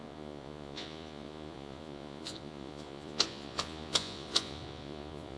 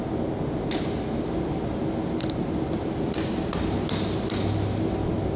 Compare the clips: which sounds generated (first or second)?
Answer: first